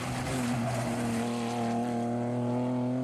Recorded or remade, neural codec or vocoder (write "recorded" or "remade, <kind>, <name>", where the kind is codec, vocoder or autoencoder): recorded